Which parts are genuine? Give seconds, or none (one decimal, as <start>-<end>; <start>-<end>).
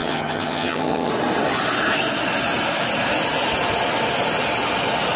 1.1-5.2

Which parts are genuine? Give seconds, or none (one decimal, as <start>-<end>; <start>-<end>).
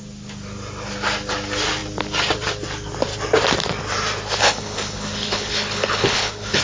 0.0-4.4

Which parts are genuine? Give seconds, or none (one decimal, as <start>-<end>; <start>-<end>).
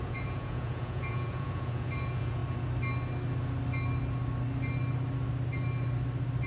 2.4-6.5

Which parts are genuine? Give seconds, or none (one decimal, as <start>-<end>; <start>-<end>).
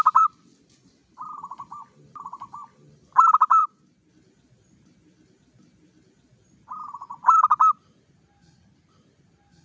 6.3-8.0